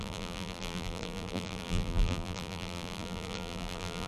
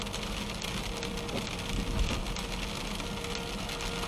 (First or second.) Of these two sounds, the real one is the second